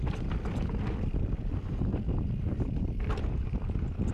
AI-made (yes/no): yes